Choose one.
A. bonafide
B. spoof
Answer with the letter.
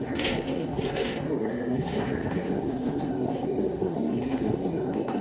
B